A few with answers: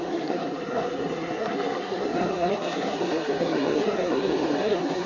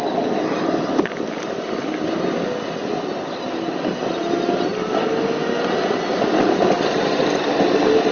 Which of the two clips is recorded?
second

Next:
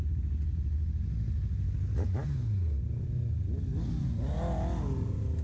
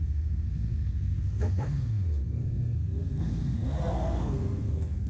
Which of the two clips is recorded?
first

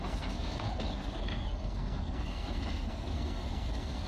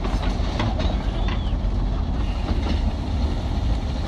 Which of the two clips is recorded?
second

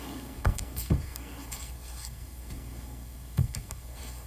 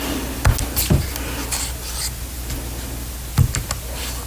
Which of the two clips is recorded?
second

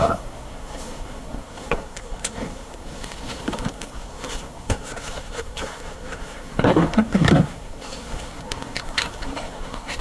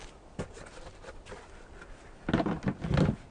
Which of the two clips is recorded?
second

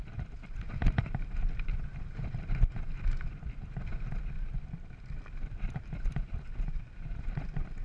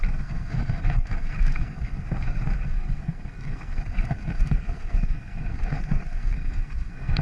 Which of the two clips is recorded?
first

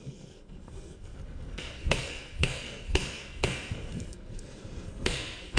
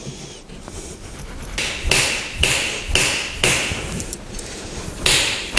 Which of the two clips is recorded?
second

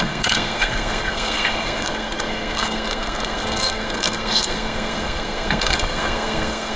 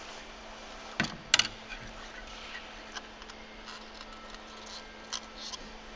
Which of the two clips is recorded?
second